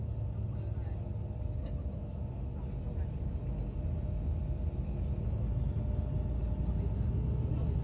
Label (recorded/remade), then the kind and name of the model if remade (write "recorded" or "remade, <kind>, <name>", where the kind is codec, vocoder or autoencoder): recorded